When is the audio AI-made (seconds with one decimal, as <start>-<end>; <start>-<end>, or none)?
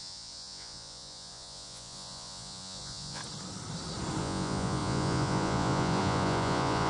0.0-3.2; 4.2-6.9